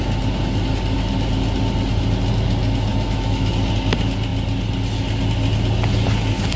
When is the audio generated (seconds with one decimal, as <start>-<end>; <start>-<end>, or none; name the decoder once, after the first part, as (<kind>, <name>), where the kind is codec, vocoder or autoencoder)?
2.9-3.5 (autoencoder, DAC-VAE)